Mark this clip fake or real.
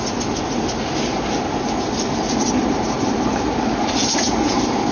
real